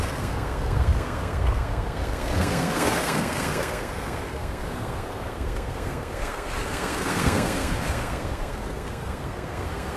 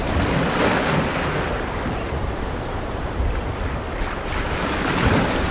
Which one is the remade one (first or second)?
first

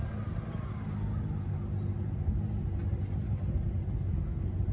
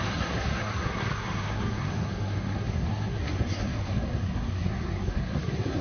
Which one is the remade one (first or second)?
second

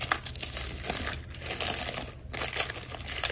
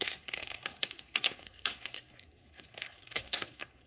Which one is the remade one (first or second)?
second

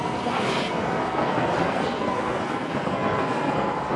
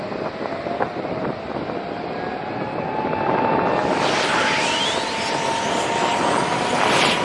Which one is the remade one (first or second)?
first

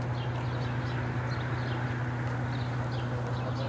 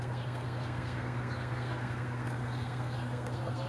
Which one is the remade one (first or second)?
second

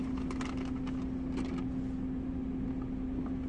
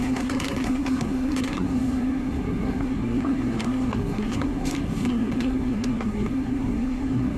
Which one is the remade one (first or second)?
second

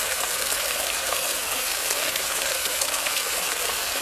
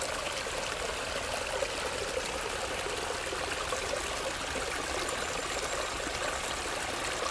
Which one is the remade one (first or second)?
first